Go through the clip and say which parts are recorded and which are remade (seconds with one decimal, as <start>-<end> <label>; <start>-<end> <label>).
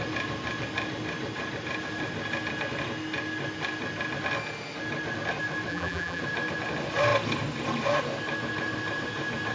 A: 0.0-5.7 recorded; 5.7-6.2 remade; 6.2-9.5 recorded